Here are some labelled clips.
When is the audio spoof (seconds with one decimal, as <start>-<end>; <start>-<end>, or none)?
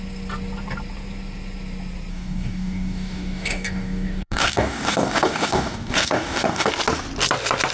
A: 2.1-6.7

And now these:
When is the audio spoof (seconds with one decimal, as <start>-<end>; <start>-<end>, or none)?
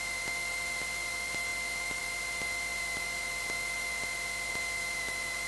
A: none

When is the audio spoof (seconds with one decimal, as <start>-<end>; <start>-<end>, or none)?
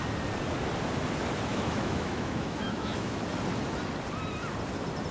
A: 1.5-3.2